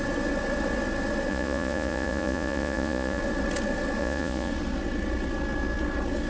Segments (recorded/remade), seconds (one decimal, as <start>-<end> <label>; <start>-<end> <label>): 0.0-1.3 recorded; 1.3-3.2 remade; 3.2-4.0 recorded; 4.0-4.5 remade; 4.5-6.3 recorded